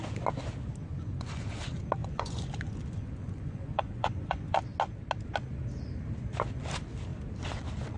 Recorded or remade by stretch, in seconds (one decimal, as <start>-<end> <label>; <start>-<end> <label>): 0.0-0.8 recorded; 0.8-1.6 remade; 1.6-2.0 recorded; 2.0-4.6 remade; 4.6-8.0 recorded